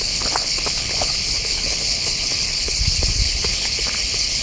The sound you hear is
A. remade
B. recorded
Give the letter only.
A